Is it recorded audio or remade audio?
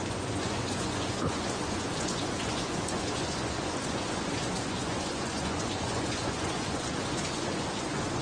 remade